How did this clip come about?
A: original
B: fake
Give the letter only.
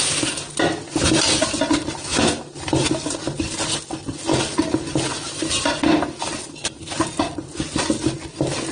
A